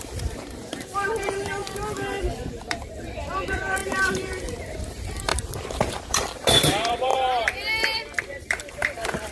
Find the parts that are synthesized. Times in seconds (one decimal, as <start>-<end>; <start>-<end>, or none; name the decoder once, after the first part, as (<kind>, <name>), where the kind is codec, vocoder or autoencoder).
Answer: 0.0-1.6 (vocoder, BigVGAN v2); 2.3-9.3

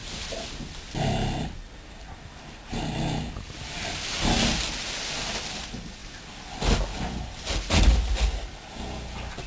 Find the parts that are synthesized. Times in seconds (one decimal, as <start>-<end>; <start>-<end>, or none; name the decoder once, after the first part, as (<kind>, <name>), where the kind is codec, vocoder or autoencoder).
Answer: none

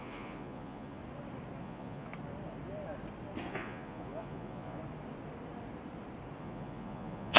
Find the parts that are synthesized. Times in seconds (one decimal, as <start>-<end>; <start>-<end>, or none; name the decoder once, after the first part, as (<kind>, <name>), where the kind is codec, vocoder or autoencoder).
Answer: 0.0-1.0 (vocoder, Vocos); 1.6-2.1; 3.5-4.8; 6.4-7.4

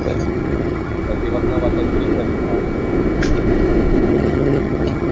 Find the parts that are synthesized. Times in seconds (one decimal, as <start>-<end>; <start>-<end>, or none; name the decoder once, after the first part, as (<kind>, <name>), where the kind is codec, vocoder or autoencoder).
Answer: 0.0-1.0 (vocoder, HiFi-GAN); 4.1-5.1

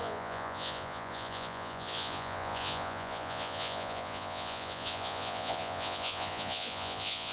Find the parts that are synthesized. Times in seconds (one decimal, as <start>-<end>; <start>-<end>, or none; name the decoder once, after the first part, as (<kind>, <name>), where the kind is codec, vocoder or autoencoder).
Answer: 0.0-7.3 (vocoder, Vocos)